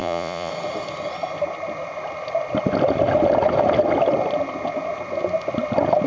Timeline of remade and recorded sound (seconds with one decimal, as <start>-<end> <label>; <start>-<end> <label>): 0.0-0.5 remade; 0.5-6.1 recorded